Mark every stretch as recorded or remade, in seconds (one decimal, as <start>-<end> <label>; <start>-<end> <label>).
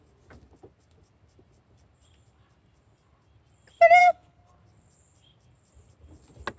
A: 0.0-4.0 recorded; 4.0-4.6 remade; 4.6-6.6 recorded